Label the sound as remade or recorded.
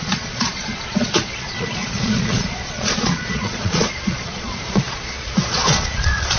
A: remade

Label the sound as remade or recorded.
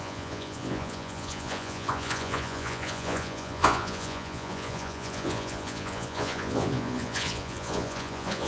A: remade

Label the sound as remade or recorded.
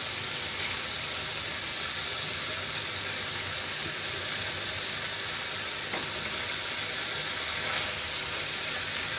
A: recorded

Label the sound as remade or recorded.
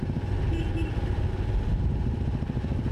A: recorded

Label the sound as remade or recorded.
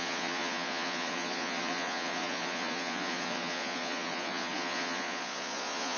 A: remade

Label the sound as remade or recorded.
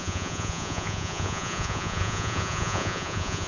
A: remade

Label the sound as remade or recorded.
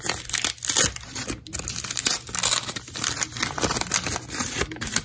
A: recorded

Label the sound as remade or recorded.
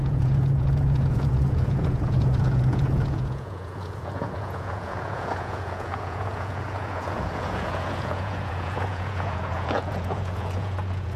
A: remade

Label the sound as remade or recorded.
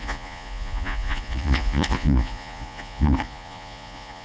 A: remade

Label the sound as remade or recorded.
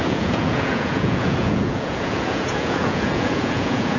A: remade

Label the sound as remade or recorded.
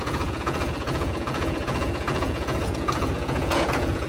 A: remade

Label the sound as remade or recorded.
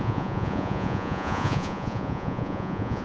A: remade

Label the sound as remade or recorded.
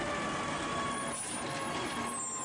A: recorded